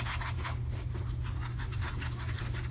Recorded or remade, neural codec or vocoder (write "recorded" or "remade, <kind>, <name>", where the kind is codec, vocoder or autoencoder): recorded